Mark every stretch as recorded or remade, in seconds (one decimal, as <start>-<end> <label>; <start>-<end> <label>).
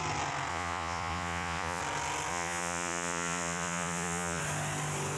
0.0-0.5 recorded; 0.5-1.8 remade; 1.8-2.3 recorded; 2.3-4.4 remade; 4.4-5.2 recorded